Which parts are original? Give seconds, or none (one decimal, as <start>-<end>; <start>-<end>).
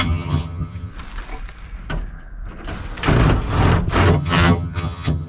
0.9-4.1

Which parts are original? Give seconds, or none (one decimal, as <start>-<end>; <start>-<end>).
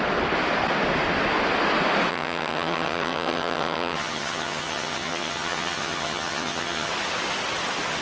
0.0-2.1; 6.9-8.0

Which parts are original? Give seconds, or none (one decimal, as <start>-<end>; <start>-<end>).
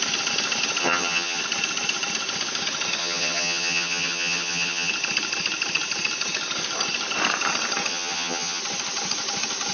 0.0-0.8; 1.4-3.0; 4.9-7.9; 8.6-9.7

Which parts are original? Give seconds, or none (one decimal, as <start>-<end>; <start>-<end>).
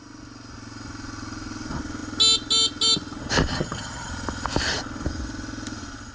0.0-3.5; 4.1-6.1